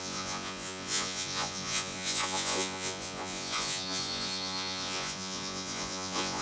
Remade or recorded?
remade